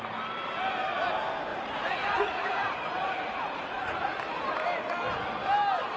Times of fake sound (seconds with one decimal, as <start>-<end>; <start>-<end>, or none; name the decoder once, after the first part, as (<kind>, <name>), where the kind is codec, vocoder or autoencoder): 1.5-4.1 (vocoder, Vocos)